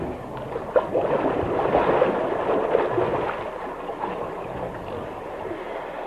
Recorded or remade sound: recorded